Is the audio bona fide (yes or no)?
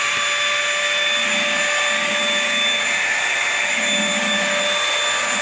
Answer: yes